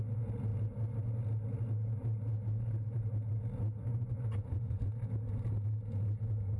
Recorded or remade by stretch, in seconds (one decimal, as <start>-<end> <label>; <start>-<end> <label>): 0.0-3.9 recorded; 3.9-4.9 remade; 4.9-6.6 recorded